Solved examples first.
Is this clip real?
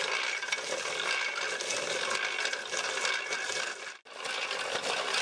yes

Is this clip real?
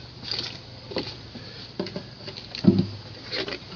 yes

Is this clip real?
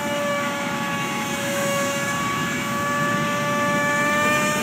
no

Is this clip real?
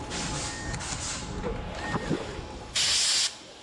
yes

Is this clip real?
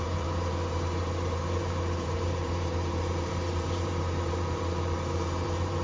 no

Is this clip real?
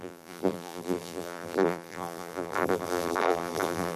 no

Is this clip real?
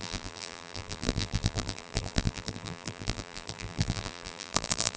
no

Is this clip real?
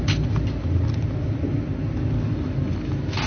yes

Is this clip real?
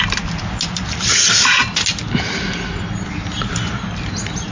yes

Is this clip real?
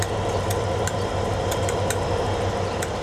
yes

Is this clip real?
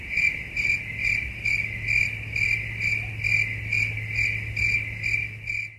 yes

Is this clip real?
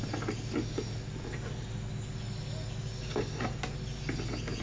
yes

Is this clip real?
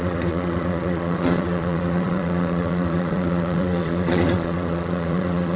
no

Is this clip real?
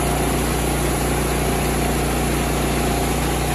yes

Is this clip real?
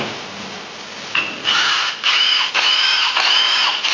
yes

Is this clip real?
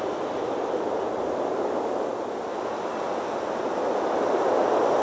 yes